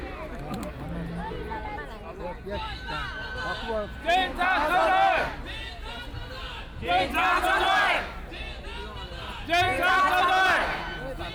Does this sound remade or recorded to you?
recorded